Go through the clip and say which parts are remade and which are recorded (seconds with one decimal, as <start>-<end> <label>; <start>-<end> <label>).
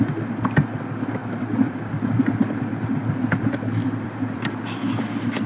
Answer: 0.0-1.2 recorded; 1.2-4.5 remade; 4.5-5.5 recorded